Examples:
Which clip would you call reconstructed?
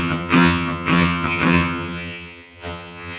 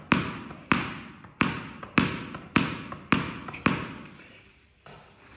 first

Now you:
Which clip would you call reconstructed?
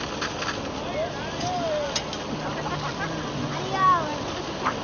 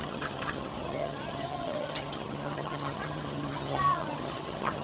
second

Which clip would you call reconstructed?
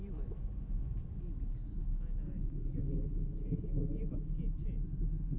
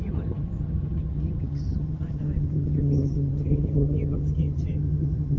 second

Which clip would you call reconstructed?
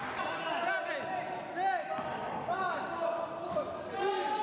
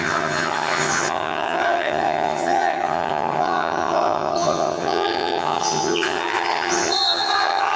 second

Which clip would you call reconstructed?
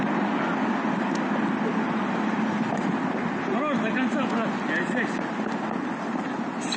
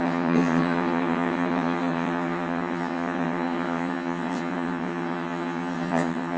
second